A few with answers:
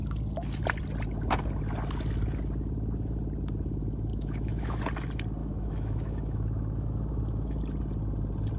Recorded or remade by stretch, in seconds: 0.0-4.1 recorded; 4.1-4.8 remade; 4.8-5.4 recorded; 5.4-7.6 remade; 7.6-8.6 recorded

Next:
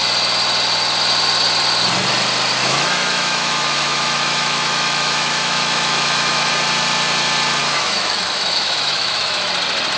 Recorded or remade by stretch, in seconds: 0.0-2.6 recorded; 2.6-6.5 remade; 6.5-7.6 recorded; 7.6-9.5 remade; 9.5-10.0 recorded